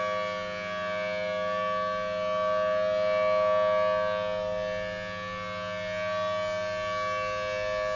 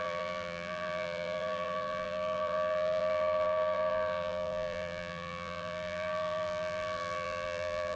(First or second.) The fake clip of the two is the second